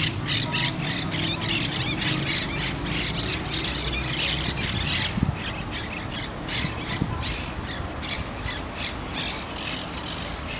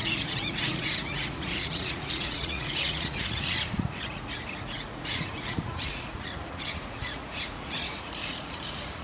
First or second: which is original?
first